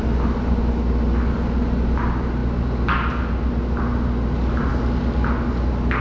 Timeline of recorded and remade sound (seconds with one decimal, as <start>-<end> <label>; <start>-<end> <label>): 0.0-6.0 recorded